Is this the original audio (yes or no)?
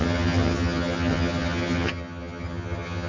no